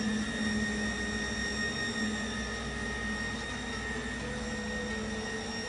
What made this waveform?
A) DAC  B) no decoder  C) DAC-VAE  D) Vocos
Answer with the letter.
B